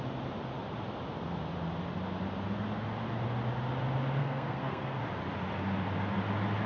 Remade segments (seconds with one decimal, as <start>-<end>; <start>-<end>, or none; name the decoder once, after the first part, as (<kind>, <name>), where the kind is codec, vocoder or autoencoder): 4.2-5.0 (codec, SNAC)